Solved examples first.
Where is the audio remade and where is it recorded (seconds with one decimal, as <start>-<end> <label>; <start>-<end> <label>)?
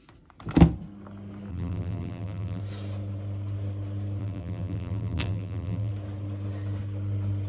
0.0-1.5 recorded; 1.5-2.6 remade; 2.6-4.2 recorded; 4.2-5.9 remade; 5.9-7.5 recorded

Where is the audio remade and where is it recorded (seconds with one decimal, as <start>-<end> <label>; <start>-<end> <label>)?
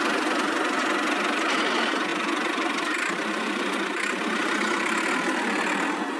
0.0-2.1 recorded; 2.1-5.8 remade; 5.8-6.2 recorded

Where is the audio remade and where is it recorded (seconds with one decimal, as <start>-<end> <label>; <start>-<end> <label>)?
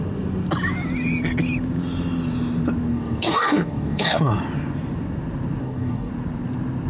0.0-2.9 recorded; 2.9-4.2 remade; 4.2-5.6 recorded; 5.6-6.1 remade; 6.1-6.9 recorded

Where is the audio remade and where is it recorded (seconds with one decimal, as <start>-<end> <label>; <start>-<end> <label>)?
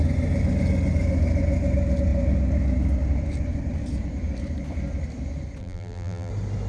0.0-5.6 recorded; 5.6-6.3 remade; 6.3-6.7 recorded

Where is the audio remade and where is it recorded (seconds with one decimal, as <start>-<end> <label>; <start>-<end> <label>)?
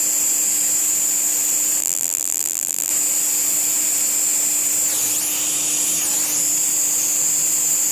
0.0-1.8 recorded; 1.8-2.9 remade; 2.9-7.9 recorded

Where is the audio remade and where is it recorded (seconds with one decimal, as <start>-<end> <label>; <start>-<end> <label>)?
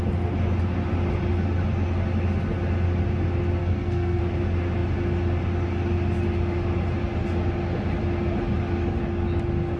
0.0-3.6 recorded; 3.6-4.2 remade; 4.2-9.8 recorded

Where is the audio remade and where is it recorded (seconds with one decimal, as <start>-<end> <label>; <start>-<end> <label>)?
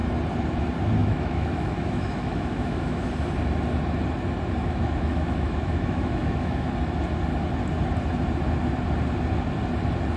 0.0-1.0 recorded; 1.0-3.1 remade; 3.1-4.6 recorded; 4.6-6.7 remade; 6.7-10.2 recorded